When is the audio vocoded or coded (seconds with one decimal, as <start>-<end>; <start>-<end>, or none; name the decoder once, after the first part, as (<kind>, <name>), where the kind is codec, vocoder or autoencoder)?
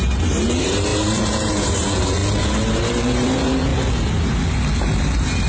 0.0-2.2 (vocoder, BigVGAN v2); 2.7-3.7; 4.8-5.5